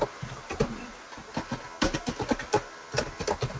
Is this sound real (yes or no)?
yes